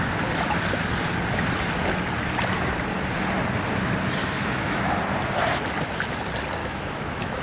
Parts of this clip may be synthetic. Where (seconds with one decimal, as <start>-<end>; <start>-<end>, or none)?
4.2-4.9; 6.6-7.4